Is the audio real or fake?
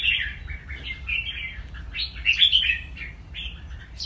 real